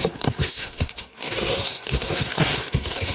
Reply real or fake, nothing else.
fake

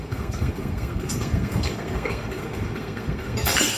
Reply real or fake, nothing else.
fake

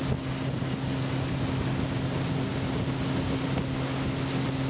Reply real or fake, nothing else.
real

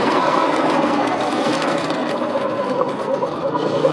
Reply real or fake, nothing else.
fake